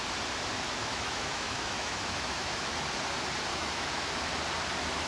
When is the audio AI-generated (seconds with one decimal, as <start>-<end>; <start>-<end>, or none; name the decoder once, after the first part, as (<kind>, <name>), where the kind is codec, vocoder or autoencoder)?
0.8-2.7 (autoencoder, DAC-VAE); 3.5-4.1